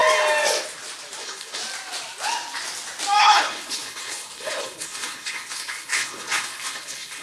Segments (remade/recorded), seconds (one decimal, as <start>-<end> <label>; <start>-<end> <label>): 0.0-1.2 recorded; 1.2-1.6 remade; 1.6-3.2 recorded; 3.2-7.2 remade